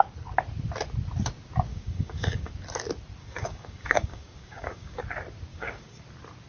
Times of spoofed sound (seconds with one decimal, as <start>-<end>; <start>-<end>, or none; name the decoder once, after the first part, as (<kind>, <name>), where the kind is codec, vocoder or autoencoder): 1.7-2.5 (codec, DAC); 3.2-5.0; 5.5-6.0